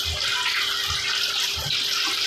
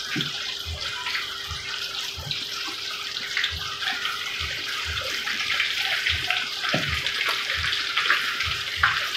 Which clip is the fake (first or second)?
second